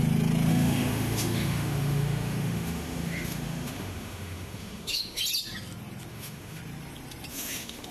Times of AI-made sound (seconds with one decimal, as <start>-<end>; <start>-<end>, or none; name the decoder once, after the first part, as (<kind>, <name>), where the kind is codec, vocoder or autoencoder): 0.5-5.2 (autoencoder, DAC-VAE); 6.1-6.6; 7.3-7.9